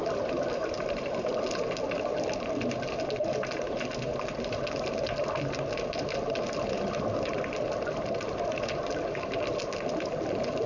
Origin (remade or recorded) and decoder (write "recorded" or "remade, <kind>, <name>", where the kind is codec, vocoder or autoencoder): recorded